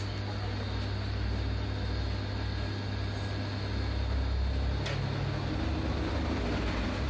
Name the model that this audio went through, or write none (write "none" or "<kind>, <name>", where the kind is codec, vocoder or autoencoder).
none